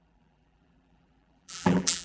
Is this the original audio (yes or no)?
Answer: no